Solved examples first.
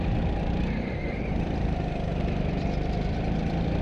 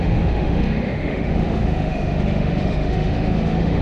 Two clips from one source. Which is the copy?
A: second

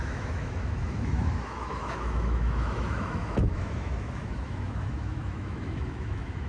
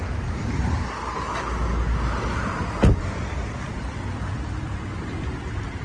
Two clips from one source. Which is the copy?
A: first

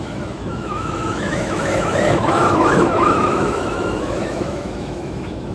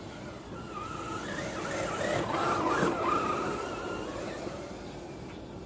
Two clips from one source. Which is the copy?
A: first